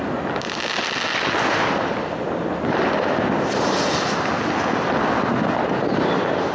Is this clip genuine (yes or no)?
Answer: yes